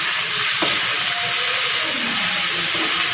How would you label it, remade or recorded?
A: remade